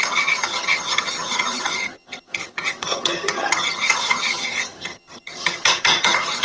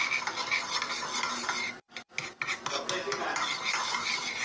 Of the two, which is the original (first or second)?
second